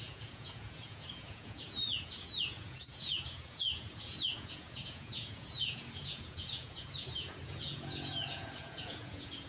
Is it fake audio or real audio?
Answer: fake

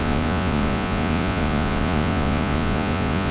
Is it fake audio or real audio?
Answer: fake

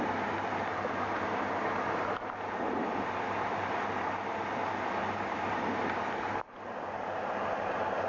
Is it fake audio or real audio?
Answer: real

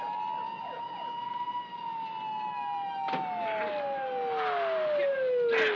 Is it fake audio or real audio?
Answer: real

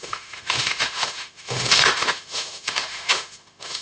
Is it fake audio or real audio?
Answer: fake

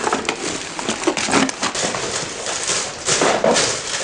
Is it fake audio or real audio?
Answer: real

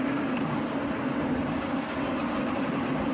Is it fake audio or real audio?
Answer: real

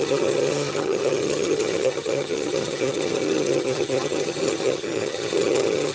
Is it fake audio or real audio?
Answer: fake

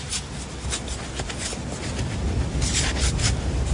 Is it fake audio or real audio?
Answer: real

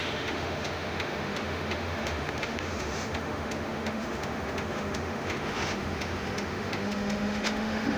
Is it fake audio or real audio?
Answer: fake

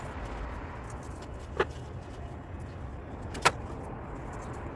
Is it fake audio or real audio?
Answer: real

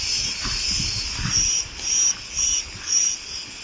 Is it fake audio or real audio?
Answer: real